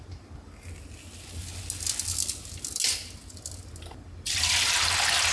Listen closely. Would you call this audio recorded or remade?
recorded